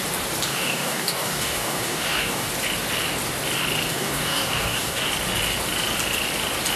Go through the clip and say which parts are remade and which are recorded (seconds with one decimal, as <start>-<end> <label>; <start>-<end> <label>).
0.0-0.5 recorded; 0.5-2.5 remade; 2.5-3.9 recorded; 3.9-5.1 remade; 5.1-6.8 recorded